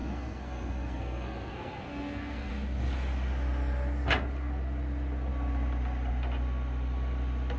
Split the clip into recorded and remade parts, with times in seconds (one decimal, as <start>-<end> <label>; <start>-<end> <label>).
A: 0.0-2.5 remade; 2.5-7.6 recorded